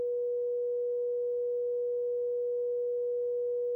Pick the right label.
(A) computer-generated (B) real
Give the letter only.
A